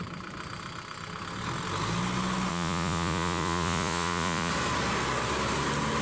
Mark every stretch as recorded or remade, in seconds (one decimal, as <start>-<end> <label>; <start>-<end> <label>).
0.0-2.5 recorded; 2.5-4.5 remade; 4.5-6.0 recorded